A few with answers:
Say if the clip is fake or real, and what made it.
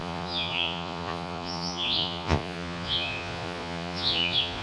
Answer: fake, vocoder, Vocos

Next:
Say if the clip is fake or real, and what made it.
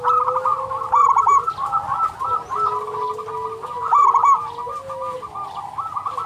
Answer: real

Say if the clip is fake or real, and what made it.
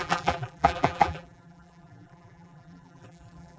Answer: fake, vocoder, BigVGAN v2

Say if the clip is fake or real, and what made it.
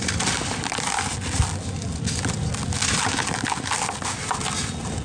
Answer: real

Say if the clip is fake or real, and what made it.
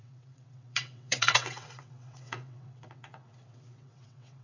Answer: fake, vocoder, WaveNeXt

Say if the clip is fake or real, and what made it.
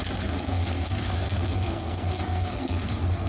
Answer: fake, codec, SNAC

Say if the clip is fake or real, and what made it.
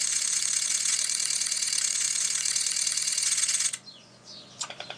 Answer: fake, vocoder, Vocos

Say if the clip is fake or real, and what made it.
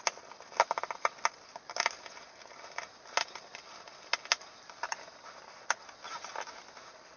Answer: real